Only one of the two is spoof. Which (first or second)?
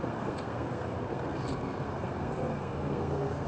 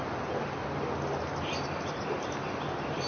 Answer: first